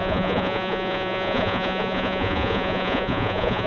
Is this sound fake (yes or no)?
yes